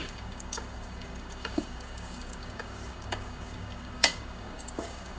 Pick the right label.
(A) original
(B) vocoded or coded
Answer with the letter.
B